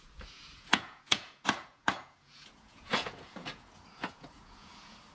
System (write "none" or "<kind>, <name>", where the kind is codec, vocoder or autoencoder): vocoder, Vocos